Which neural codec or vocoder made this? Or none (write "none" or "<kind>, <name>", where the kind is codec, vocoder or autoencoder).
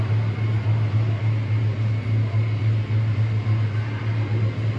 none